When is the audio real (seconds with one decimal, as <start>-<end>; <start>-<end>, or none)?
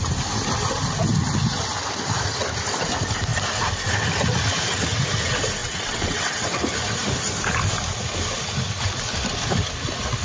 0.0-5.6; 6.6-10.2